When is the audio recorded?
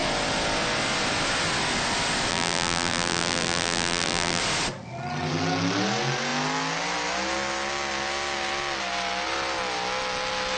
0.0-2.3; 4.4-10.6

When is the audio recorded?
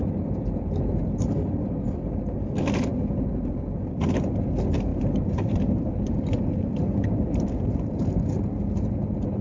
0.0-4.9; 8.2-9.4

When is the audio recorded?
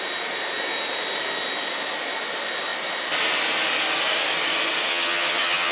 0.0-4.9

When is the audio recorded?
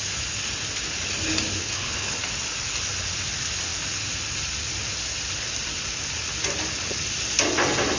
0.0-1.6; 2.2-8.0